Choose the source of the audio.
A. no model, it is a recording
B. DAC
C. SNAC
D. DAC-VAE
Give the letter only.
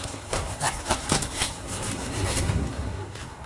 C